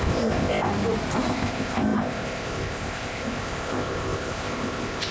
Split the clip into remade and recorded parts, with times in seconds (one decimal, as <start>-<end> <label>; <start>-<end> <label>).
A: 0.0-0.7 remade; 0.7-1.3 recorded; 1.3-5.1 remade